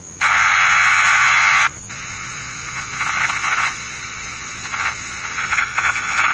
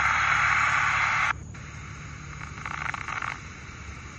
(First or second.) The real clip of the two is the second